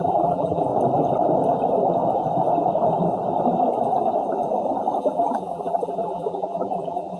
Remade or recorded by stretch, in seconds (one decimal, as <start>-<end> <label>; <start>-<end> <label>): 0.0-0.7 remade; 0.7-5.0 recorded; 5.0-7.2 remade